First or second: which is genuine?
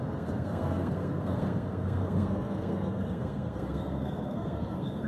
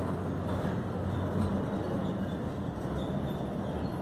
second